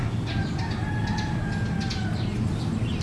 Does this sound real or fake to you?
real